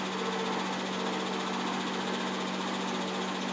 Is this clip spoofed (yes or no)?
no